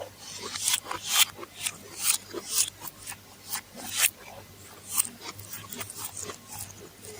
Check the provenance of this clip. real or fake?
real